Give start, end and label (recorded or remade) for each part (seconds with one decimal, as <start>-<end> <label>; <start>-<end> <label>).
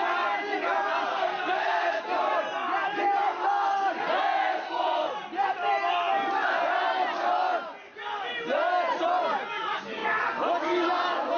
0.0-1.1 recorded; 1.1-2.0 remade; 2.0-4.4 recorded; 4.4-5.1 remade; 5.1-11.4 recorded